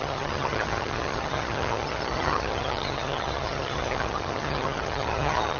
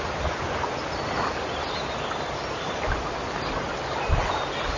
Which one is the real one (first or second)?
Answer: second